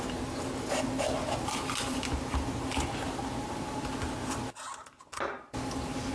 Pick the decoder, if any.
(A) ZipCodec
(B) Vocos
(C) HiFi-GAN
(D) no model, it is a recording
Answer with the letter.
D